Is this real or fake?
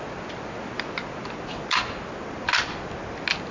real